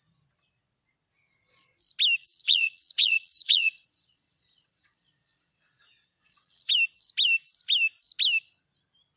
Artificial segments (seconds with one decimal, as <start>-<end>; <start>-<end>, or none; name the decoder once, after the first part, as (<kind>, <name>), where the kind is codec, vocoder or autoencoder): 2.2-6.7 (vocoder, Vocos)